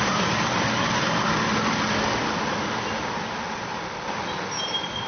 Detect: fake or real real